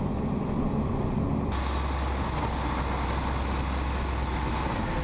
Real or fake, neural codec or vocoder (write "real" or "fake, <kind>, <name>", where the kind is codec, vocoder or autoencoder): real